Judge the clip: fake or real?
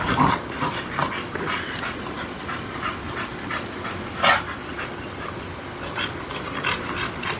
real